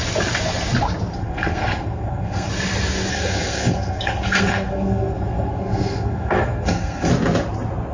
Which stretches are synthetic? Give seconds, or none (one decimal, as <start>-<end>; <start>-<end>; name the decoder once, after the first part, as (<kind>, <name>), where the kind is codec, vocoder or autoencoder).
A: 1.1-2.5 (codec, SNAC); 3.1-7.1